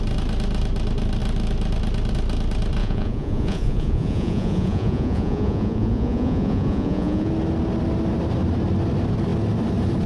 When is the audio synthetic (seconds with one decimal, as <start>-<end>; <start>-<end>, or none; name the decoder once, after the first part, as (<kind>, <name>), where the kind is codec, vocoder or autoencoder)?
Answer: 2.8-7.3 (vocoder, Vocos)